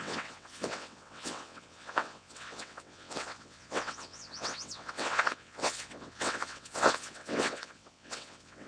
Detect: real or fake fake